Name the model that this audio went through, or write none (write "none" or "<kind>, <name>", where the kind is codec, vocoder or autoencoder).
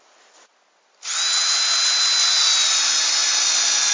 none